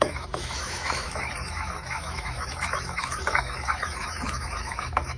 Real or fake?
fake